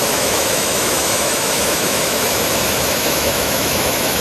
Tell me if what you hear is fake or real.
fake